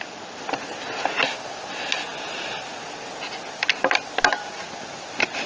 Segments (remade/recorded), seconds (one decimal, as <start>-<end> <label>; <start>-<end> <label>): 0.0-5.5 recorded